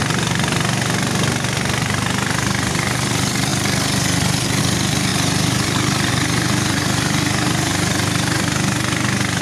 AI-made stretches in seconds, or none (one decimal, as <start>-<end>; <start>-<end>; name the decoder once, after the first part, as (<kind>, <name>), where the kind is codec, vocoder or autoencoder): 3.5-4.6 (vocoder, BigVGAN v2); 5.1-6.1

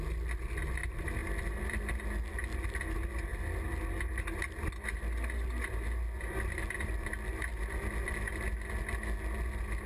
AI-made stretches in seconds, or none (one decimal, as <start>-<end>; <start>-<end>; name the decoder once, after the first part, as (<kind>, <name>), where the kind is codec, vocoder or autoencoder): 1.2-1.8 (vocoder, BigVGAN v2)

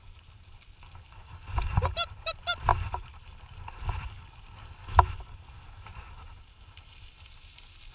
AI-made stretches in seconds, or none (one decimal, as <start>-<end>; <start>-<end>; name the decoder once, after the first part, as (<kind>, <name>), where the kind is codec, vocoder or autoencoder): 2.7-3.9 (vocoder, BigVGAN v2)

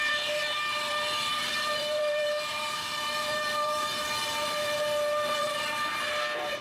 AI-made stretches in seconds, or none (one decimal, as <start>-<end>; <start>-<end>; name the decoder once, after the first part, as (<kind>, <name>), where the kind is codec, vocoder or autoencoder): 1.3-5.3 (vocoder, BigVGAN v2)